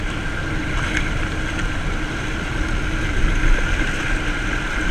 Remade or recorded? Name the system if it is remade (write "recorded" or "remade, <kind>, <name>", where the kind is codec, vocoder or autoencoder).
recorded